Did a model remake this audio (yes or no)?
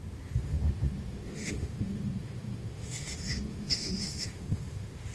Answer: yes